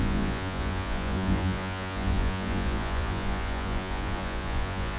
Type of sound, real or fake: fake